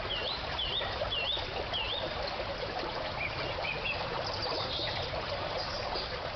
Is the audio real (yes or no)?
yes